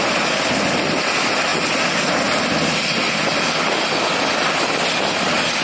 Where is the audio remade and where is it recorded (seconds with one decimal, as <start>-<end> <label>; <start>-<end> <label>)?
0.0-5.6 recorded